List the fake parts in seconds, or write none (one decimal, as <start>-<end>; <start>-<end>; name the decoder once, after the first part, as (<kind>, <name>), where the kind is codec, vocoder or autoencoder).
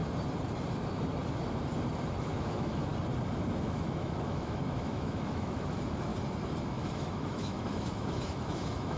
2.2-2.9 (autoencoder, DAC-VAE); 3.6-6.1; 6.7-9.0